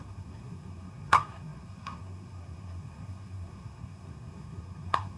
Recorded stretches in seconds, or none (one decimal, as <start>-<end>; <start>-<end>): none